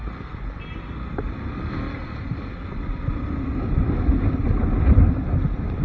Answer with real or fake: real